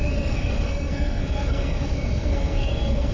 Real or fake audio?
fake